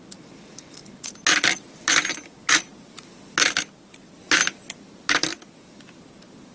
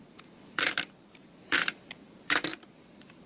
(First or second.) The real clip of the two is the first